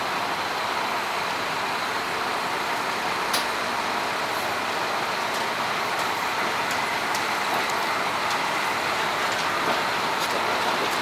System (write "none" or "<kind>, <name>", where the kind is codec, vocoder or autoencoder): none